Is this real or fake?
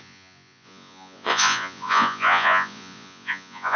fake